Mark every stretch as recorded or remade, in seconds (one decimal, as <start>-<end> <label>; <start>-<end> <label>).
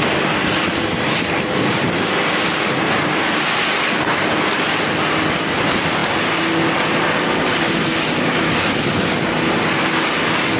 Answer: 0.0-10.6 recorded